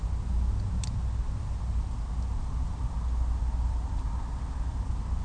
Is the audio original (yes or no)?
yes